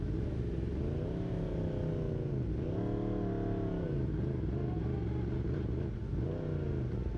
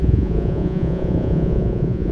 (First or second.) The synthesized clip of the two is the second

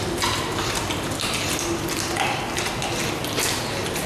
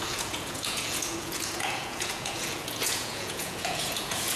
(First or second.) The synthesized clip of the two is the second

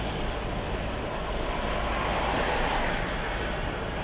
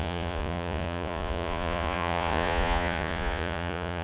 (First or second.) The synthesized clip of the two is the second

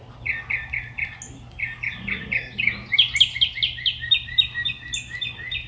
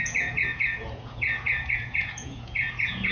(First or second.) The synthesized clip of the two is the second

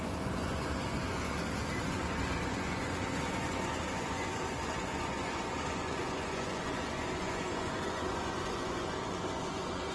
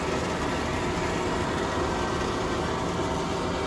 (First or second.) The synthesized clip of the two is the first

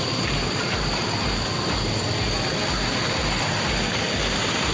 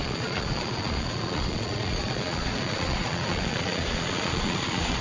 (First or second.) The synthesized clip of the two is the second